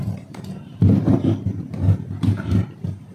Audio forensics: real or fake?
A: fake